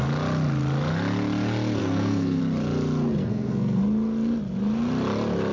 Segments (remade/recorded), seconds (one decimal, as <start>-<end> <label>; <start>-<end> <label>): 0.0-1.8 recorded; 1.8-2.4 remade; 2.4-3.2 recorded; 3.2-3.8 remade; 3.8-5.5 recorded